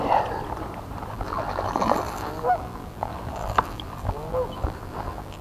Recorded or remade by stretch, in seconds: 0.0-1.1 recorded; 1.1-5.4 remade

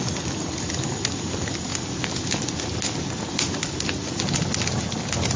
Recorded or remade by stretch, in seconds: 0.0-5.4 recorded